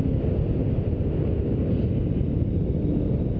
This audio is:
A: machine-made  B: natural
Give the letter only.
B